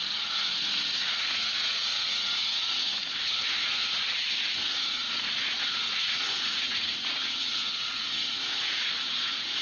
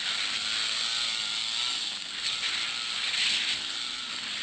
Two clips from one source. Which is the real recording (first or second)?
second